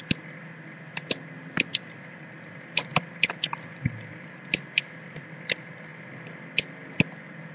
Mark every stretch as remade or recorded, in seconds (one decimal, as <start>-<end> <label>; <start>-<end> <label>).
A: 0.0-1.7 recorded; 1.7-4.5 remade; 4.5-7.5 recorded